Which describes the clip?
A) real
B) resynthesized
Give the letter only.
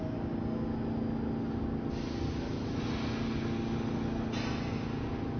A